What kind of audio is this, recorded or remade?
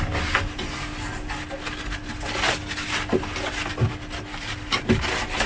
recorded